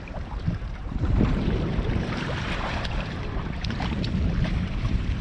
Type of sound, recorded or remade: remade